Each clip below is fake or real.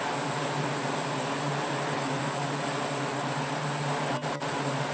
real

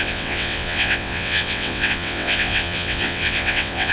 fake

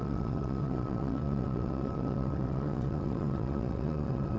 fake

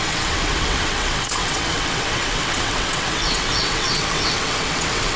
fake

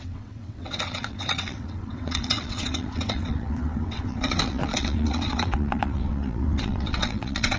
fake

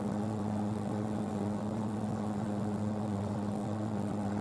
fake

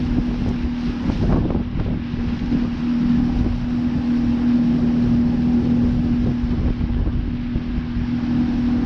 real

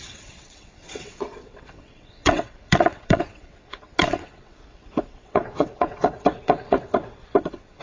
fake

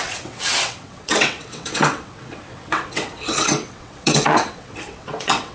fake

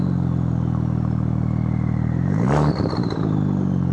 real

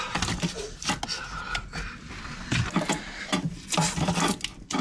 real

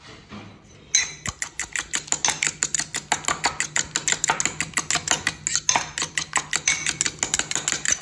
real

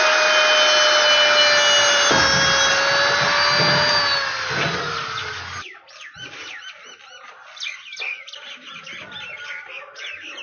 real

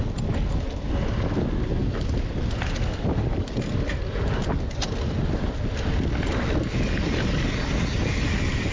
real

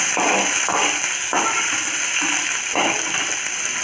real